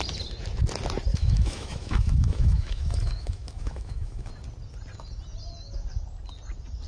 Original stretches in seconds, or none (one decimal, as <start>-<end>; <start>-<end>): 0.0-1.1; 4.3-6.9